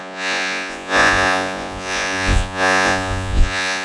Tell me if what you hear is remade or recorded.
remade